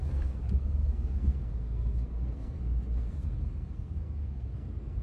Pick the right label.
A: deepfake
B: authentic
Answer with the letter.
A